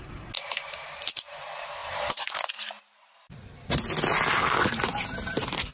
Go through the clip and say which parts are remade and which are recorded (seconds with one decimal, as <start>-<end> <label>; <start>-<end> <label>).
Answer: 0.0-5.7 recorded